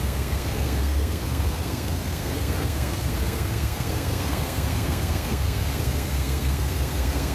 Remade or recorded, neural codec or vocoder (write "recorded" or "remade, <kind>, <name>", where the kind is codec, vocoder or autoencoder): remade, codec, SNAC